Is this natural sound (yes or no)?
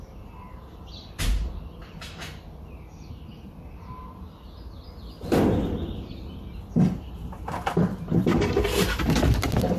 yes